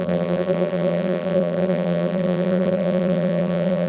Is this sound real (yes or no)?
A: no